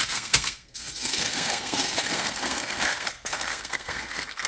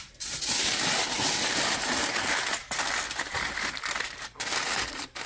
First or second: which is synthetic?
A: first